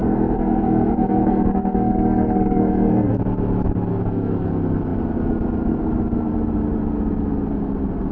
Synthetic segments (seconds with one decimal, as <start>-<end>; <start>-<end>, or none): 0.0-3.2; 3.9-4.5